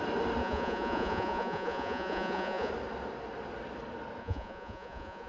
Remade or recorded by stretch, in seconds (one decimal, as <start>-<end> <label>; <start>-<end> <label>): 0.0-0.4 recorded; 0.4-2.7 remade; 2.7-4.2 recorded; 4.2-5.3 remade